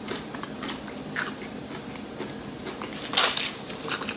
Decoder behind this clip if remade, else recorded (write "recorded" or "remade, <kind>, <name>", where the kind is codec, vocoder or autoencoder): recorded